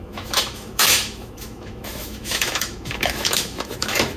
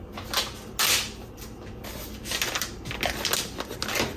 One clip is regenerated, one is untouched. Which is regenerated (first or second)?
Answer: first